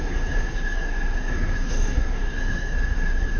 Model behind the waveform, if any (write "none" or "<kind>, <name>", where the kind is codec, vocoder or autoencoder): codec, SNAC